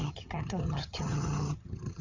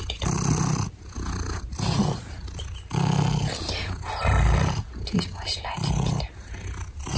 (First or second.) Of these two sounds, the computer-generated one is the first